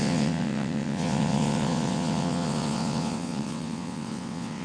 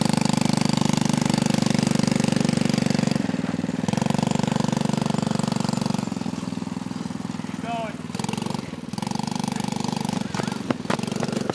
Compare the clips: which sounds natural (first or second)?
second